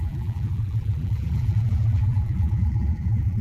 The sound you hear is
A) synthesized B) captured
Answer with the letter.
A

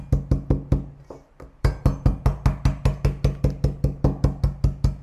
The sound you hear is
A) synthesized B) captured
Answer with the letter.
B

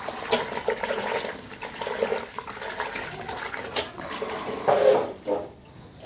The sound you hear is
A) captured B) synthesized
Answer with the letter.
A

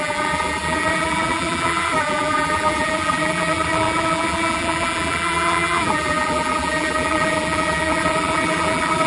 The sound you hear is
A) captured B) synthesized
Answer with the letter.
B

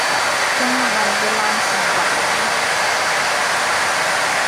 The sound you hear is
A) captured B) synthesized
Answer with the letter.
A